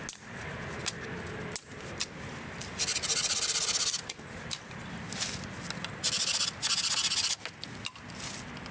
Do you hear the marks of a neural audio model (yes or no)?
no